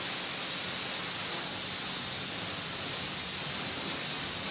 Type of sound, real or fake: real